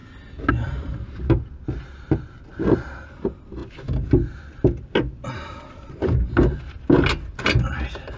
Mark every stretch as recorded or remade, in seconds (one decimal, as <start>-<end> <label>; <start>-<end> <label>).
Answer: 0.0-8.2 recorded